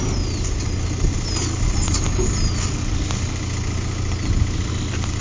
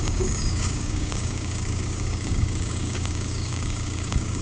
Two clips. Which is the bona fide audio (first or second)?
first